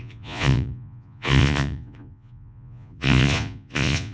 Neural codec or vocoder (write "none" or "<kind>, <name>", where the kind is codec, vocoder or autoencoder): vocoder, Vocos